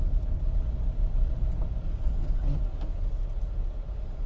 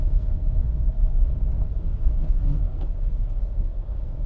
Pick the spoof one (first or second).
second